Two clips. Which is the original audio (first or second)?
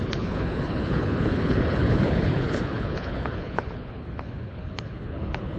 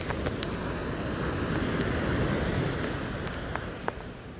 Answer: second